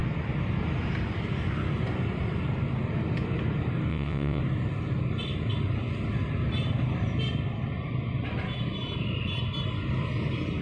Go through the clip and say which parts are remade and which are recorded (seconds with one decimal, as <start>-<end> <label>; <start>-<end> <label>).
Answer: 0.0-3.9 recorded; 3.9-4.4 remade; 4.4-10.6 recorded